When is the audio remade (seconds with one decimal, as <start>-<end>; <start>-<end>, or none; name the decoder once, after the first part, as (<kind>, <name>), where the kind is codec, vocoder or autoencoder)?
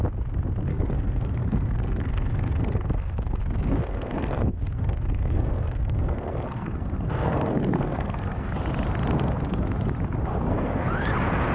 0.7-3.4 (codec, SNAC); 3.9-8.5; 10.3-10.9